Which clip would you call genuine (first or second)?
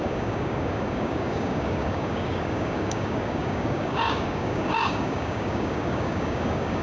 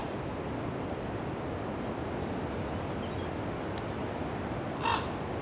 second